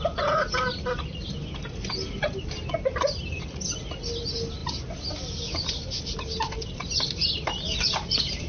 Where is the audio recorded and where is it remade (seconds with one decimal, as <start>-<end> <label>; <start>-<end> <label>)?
0.0-8.5 recorded